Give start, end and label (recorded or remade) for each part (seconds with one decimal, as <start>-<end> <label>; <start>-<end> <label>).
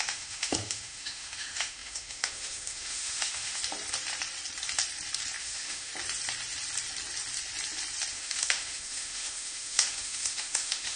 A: 0.0-3.6 remade; 3.6-5.4 recorded; 5.4-5.9 remade; 5.9-8.1 recorded; 8.1-11.0 remade